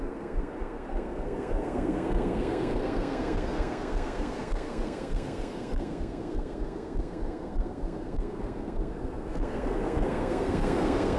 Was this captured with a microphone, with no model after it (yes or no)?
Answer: no